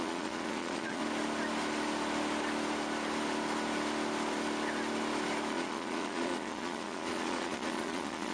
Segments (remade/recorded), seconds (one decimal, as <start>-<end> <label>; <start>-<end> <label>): 0.0-1.0 remade; 1.0-5.5 recorded; 5.5-8.3 remade